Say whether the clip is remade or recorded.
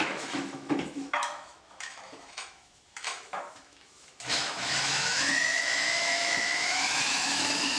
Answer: remade